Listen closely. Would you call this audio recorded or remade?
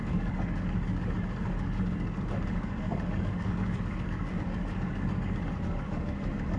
remade